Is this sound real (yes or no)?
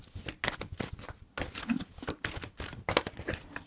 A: yes